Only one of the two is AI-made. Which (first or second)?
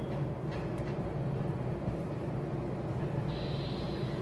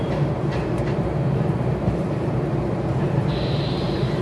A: second